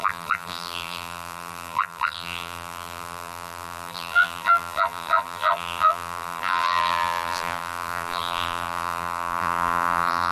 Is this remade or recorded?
remade